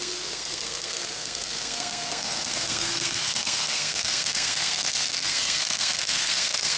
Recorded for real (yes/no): no